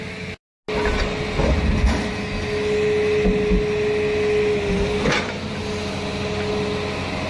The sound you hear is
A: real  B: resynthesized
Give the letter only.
A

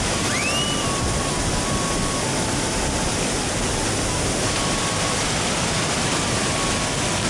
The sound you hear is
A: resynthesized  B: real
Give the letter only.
B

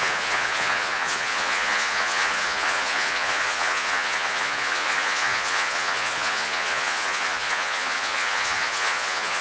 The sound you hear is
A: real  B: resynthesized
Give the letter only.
B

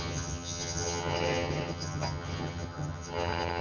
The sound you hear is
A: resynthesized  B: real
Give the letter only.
A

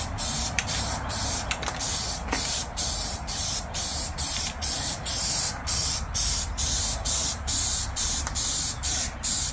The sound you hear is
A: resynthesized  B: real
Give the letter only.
A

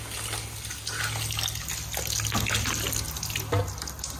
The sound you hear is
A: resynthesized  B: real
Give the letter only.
B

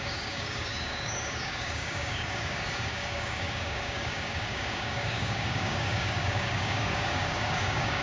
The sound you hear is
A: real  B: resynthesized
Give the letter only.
B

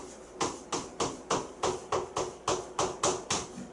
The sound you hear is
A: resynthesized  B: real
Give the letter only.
B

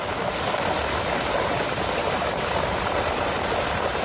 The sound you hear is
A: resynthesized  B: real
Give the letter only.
B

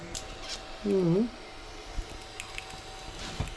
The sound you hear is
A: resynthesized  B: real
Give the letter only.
B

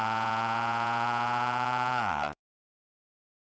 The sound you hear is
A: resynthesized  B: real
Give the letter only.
A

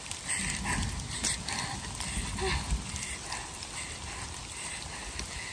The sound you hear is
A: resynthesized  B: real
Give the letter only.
B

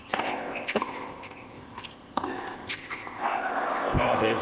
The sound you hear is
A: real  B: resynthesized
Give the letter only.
B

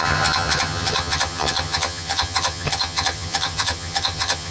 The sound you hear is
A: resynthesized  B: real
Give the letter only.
A